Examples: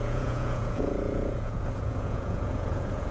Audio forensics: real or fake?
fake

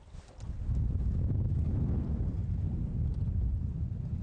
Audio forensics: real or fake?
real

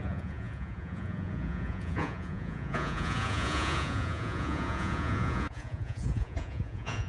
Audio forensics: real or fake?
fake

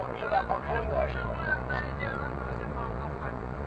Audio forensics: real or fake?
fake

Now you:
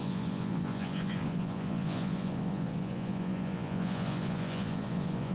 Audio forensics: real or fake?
fake